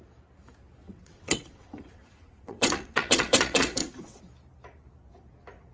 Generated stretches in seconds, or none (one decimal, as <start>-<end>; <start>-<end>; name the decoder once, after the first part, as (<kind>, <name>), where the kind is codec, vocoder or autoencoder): 0.8-4.2 (vocoder, WaveNeXt)